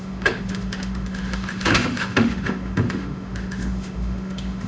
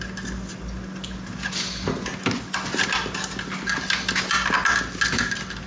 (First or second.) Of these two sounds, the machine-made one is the first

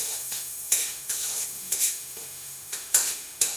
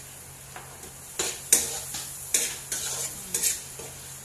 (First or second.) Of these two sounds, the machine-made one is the first